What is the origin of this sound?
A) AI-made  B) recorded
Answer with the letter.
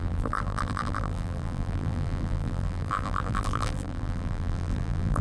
A